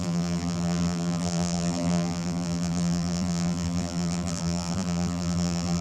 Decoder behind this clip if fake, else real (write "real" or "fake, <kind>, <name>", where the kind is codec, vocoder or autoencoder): fake, vocoder, BigVGAN v2